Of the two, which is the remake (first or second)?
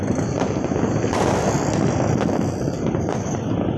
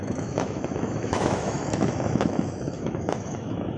second